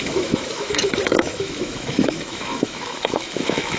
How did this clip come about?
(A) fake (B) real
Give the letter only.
A